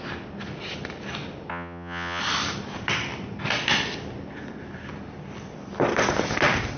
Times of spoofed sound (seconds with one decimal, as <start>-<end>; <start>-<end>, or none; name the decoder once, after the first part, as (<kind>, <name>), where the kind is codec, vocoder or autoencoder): 1.5-2.2 (vocoder, Vocos)